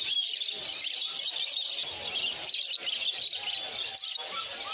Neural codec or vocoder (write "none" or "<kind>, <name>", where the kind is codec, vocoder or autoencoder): none